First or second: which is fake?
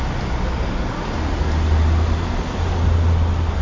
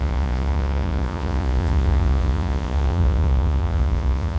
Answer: second